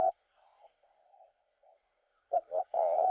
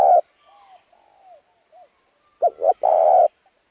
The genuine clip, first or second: second